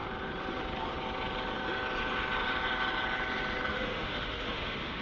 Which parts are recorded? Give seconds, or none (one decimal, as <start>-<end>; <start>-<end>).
0.0-3.7

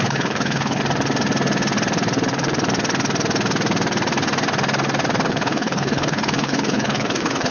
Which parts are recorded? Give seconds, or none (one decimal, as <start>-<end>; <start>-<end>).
0.8-5.3

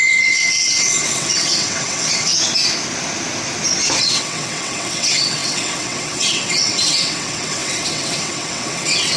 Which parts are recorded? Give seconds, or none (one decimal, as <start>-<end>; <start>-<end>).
2.3-4.0

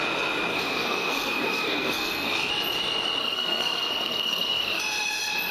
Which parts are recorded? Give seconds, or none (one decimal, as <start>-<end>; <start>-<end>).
0.0-0.5; 2.5-3.2; 4.8-5.5